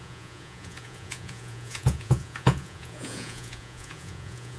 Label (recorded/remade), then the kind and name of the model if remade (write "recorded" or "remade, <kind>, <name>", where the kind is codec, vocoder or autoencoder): remade, vocoder, Vocos